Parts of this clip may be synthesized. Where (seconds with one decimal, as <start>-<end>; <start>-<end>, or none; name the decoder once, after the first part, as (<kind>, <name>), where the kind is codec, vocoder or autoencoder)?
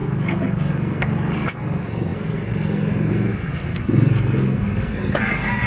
0.0-5.7 (codec, SNAC)